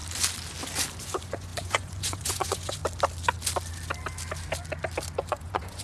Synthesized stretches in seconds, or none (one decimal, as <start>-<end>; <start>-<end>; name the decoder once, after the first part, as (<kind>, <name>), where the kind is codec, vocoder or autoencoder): 1.0-2.8 (vocoder, Vocos); 5.3-5.8